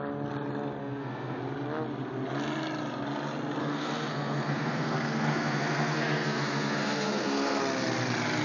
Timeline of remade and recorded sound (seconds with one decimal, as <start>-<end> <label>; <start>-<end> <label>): 0.0-0.8 recorded; 0.8-1.4 remade; 1.4-3.6 recorded; 3.6-7.6 remade; 7.6-8.4 recorded